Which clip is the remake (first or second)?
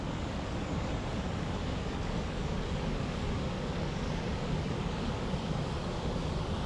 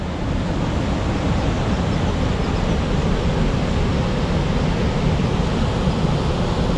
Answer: first